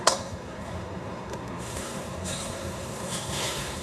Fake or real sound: fake